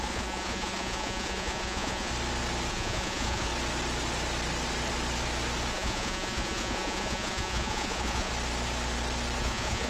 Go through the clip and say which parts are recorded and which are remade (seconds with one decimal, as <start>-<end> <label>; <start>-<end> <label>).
0.0-2.1 remade; 2.1-2.7 recorded; 2.7-3.5 remade; 3.5-5.7 recorded; 5.7-8.3 remade; 8.3-9.4 recorded; 9.4-9.9 remade